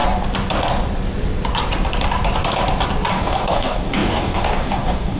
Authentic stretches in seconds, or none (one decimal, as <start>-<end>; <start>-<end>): 0.0-3.1